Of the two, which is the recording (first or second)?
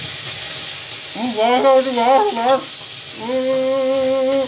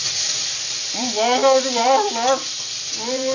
first